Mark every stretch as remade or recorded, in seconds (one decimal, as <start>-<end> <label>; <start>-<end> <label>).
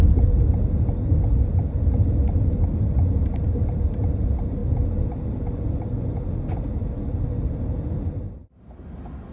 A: 0.0-9.3 recorded